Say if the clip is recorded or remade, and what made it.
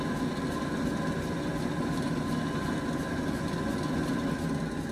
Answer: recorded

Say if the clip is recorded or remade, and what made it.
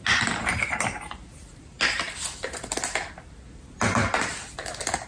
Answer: recorded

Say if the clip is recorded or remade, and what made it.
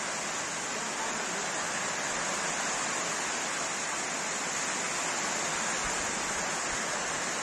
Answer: recorded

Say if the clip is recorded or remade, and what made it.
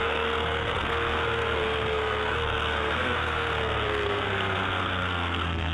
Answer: remade, codec, SNAC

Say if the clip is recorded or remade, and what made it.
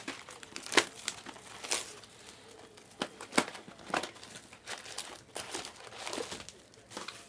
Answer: recorded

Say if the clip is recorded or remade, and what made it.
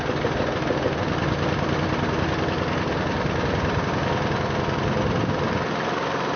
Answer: recorded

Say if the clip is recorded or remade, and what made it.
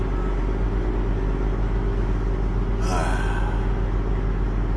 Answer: recorded